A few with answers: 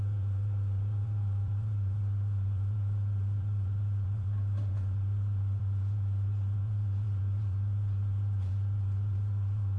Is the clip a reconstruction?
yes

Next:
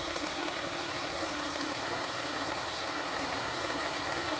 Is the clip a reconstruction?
yes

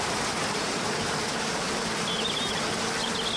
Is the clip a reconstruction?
no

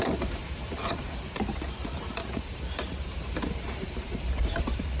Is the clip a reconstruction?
yes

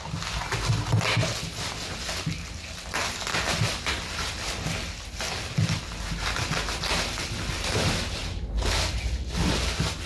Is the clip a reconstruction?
no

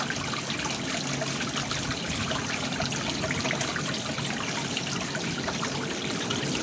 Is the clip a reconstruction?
no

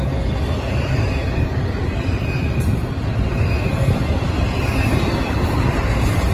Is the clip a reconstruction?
no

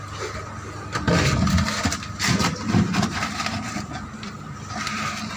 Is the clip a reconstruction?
no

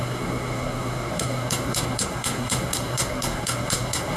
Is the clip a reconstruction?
yes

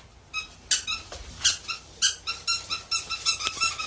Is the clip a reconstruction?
no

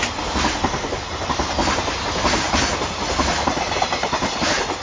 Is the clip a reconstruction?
no